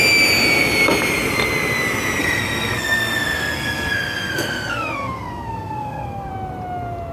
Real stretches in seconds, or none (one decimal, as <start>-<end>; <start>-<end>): 0.0-2.2; 6.3-7.1